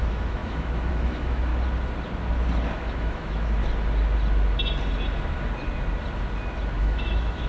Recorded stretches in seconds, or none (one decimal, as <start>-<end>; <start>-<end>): 1.5-2.8; 3.6-6.8